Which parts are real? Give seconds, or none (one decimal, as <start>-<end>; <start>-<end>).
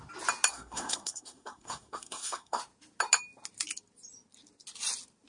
0.0-0.5; 2.6-5.3